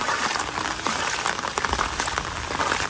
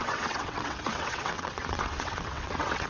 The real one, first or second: first